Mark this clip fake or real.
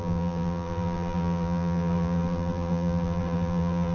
fake